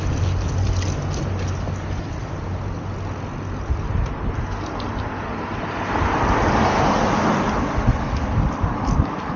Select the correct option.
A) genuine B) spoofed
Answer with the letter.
A